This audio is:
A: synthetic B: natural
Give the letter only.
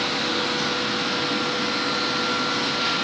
B